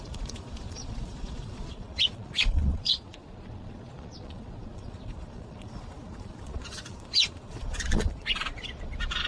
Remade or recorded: remade